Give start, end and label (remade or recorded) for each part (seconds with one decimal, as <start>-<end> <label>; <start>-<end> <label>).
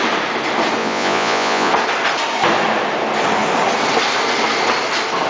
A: 0.0-0.8 recorded; 0.8-1.7 remade; 1.7-5.3 recorded